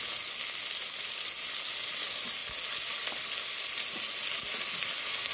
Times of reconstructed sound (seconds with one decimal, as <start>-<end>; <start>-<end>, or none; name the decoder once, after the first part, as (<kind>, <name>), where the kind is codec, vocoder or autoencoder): none